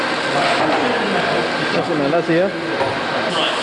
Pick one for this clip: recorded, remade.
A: recorded